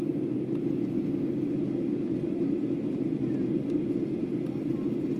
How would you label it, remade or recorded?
recorded